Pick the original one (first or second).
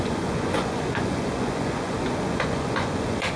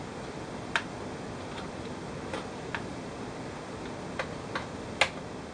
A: second